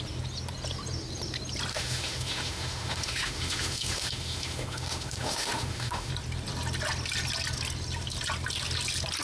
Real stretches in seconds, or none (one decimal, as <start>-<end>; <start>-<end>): 0.0-1.7; 6.1-9.2